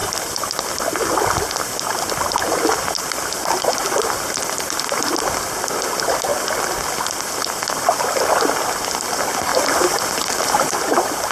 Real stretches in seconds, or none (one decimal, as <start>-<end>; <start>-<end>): 0.0-6.3; 6.8-9.5; 10.7-11.3